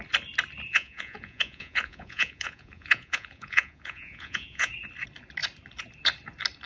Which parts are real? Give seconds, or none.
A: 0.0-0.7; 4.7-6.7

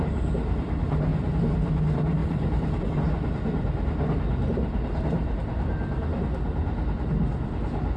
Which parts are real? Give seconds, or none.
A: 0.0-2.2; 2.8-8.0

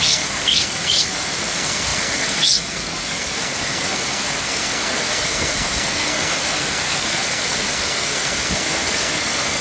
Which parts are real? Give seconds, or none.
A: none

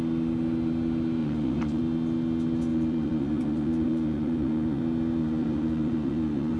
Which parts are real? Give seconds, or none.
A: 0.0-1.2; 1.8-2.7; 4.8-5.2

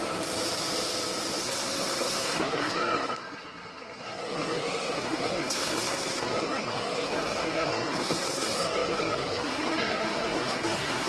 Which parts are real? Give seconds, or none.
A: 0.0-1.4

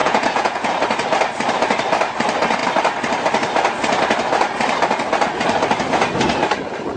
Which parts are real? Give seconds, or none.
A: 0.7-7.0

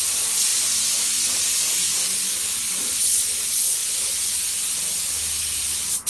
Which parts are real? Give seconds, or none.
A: 0.0-6.1